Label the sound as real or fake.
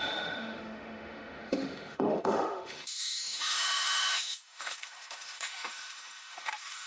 fake